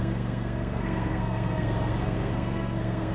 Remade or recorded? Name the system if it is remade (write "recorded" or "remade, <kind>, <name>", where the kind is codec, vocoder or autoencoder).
remade, codec, SNAC